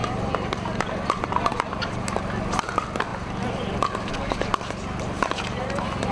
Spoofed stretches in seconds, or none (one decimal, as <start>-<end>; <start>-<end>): 0.0-2.0